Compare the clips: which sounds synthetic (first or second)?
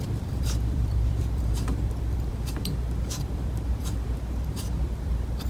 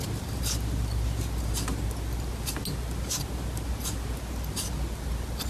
first